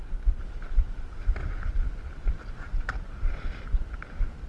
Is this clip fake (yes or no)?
no